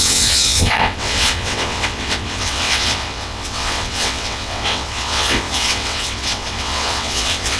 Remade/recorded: remade